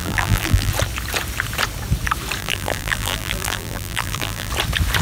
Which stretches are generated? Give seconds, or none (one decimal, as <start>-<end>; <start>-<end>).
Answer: 0.0-0.7; 2.4-4.5